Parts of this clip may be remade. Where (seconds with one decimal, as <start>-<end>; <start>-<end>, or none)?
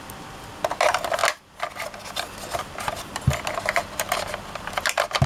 none